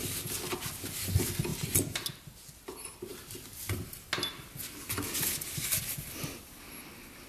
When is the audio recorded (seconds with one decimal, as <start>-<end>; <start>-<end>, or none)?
0.0-7.3